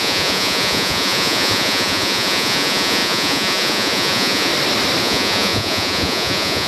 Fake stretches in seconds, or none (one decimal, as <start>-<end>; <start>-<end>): 0.0-4.5; 5.0-6.7